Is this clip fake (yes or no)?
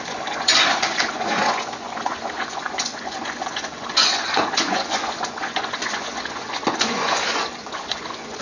yes